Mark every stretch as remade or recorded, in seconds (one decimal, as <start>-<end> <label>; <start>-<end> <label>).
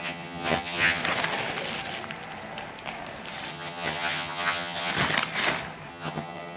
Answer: 0.0-1.0 remade; 1.0-3.5 recorded; 3.5-4.9 remade; 4.9-5.9 recorded; 5.9-6.6 remade